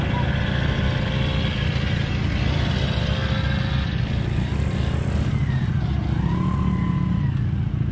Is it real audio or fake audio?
real